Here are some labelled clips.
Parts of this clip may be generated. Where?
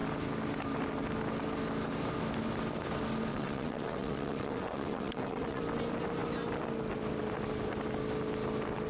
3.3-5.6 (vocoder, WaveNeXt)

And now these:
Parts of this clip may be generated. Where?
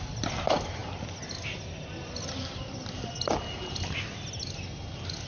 none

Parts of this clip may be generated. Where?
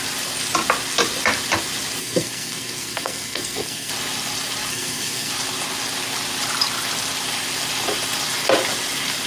2.0-3.9 (codec, SNAC); 4.7-5.3